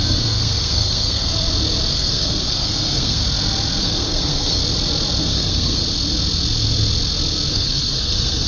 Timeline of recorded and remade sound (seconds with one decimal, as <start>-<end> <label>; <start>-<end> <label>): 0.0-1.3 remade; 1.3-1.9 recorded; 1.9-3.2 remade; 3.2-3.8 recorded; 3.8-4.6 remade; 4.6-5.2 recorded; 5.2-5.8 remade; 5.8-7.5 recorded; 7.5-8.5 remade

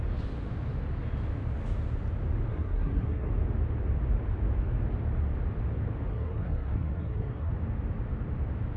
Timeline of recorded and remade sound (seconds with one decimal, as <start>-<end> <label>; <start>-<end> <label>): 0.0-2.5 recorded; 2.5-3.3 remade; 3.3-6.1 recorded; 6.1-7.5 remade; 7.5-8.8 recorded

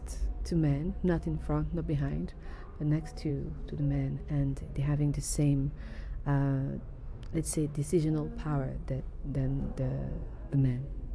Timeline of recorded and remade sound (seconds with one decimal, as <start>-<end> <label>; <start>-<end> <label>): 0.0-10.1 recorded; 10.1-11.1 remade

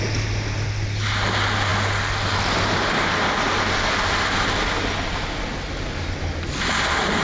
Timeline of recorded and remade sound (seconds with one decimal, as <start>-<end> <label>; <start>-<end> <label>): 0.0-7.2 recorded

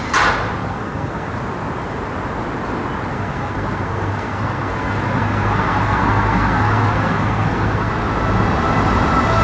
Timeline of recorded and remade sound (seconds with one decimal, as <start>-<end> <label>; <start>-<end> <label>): 0.0-0.6 recorded; 0.6-1.3 remade; 1.3-3.1 recorded; 3.1-7.9 remade; 7.9-9.4 recorded

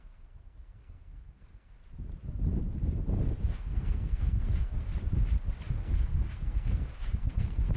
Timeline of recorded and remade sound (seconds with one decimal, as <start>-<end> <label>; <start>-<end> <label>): 0.0-1.8 remade; 1.8-3.4 recorded; 3.4-4.9 remade; 4.9-5.7 recorded; 5.7-7.8 remade